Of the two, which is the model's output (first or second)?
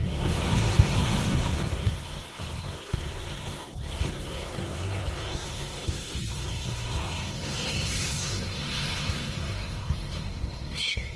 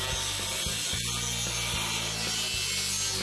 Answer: first